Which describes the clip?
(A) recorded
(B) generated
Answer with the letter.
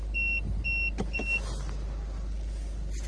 A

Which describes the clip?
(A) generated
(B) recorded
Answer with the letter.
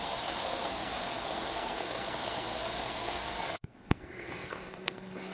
A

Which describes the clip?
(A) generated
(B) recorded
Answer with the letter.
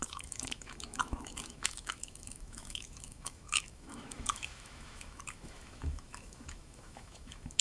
A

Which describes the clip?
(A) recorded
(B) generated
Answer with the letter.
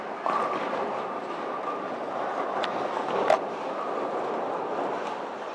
A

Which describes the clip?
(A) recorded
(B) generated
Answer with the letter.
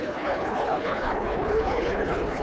B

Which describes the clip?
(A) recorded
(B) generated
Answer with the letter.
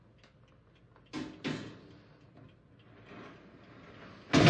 A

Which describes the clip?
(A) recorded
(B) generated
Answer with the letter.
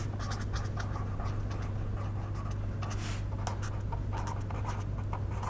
A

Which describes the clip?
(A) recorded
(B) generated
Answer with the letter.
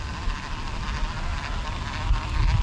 A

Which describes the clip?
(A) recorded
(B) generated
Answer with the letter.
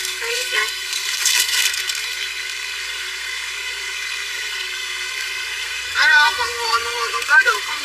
B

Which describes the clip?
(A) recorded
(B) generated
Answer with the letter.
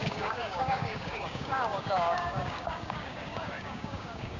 B